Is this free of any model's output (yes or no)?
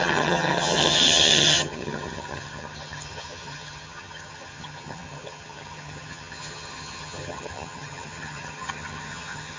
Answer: no